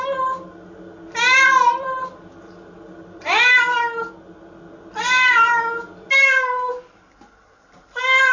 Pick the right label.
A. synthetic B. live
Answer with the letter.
B